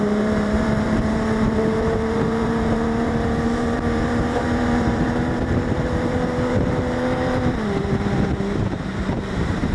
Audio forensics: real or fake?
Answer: fake